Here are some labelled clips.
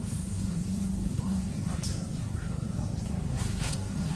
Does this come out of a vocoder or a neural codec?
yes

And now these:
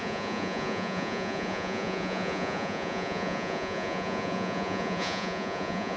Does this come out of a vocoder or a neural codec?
yes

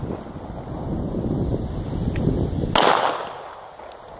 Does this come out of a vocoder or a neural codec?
no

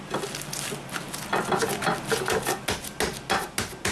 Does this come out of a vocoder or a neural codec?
no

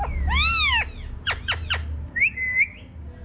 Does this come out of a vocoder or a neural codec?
no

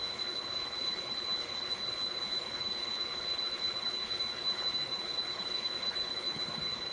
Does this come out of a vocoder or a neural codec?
yes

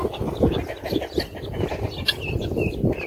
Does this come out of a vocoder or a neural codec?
no